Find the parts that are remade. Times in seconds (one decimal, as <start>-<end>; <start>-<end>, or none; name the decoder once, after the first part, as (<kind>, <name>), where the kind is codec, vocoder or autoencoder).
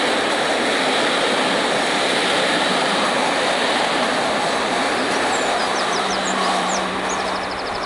2.2-6.9 (vocoder, BigVGAN v2)